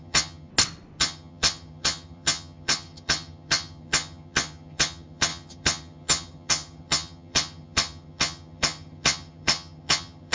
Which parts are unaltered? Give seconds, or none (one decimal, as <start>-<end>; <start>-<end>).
0.5-1.0